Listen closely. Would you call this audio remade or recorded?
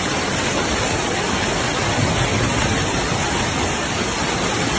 recorded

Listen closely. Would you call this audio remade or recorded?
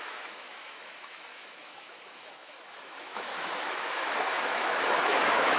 remade